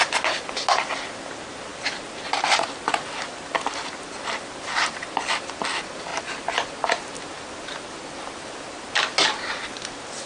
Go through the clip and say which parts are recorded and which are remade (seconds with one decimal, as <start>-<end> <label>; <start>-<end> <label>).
0.0-10.3 recorded